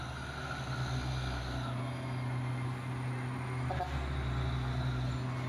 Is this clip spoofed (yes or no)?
no